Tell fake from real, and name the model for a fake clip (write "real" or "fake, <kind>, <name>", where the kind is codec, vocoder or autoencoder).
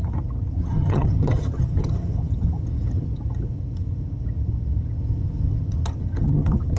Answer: fake, vocoder, HiFi-GAN